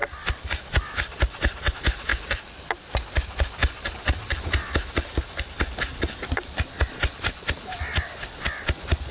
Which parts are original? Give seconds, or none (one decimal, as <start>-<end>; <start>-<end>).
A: 1.7-5.9; 7.1-9.1